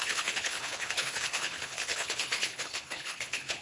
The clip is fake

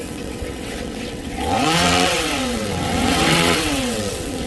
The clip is fake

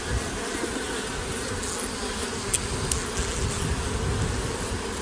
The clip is real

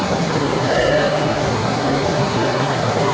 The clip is fake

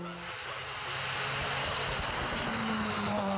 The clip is real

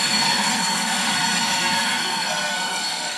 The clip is fake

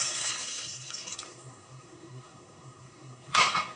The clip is fake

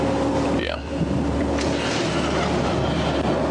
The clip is real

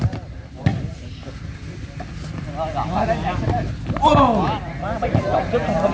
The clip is real